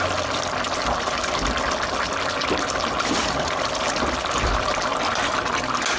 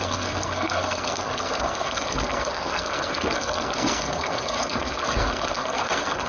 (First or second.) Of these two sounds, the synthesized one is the second